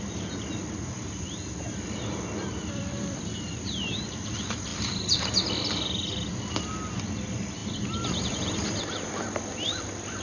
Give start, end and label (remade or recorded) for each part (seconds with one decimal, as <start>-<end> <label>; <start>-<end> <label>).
0.0-1.0 recorded; 1.0-3.9 remade; 3.9-4.7 recorded; 4.7-6.7 remade; 6.7-7.6 recorded; 7.6-9.1 remade; 9.1-10.2 recorded